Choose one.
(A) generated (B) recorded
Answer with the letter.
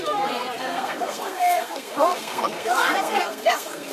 A